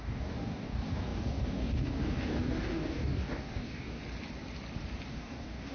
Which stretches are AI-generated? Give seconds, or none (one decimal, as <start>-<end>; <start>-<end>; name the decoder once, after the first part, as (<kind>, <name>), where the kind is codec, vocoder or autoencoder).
0.0-4.0 (codec, DAC); 5.1-5.7